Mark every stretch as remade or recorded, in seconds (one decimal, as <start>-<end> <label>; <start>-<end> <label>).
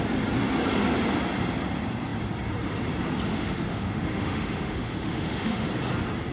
0.0-3.3 recorded; 3.3-5.7 remade; 5.7-6.3 recorded